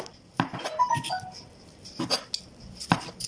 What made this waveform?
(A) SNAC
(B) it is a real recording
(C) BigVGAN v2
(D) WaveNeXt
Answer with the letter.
B